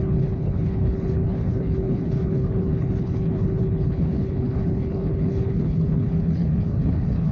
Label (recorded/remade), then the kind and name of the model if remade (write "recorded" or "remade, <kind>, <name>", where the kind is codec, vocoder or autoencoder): remade, codec, HILCodec